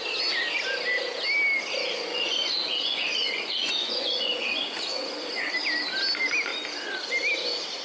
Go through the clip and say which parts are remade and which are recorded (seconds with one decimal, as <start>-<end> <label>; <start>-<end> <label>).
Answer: 0.0-2.1 recorded; 2.1-5.5 remade; 5.5-7.8 recorded